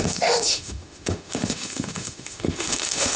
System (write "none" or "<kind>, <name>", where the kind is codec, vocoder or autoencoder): autoencoder, DAC-VAE